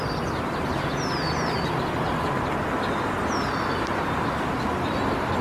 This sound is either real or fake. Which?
real